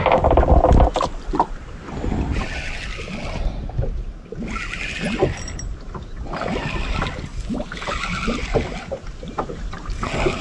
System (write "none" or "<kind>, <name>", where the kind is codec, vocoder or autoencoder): none